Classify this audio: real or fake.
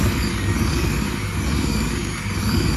fake